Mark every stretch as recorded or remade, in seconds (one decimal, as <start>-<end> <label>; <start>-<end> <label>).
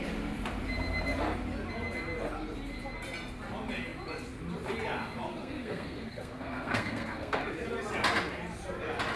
0.0-5.3 recorded; 5.3-7.4 remade; 7.4-9.2 recorded